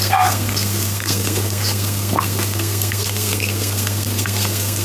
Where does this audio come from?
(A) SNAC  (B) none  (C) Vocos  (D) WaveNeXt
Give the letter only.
A